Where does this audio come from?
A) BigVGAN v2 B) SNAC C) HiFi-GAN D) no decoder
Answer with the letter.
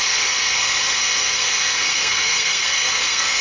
B